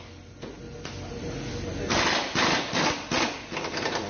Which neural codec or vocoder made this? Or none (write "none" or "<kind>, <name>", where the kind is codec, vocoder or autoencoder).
none